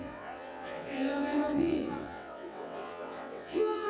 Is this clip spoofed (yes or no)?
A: yes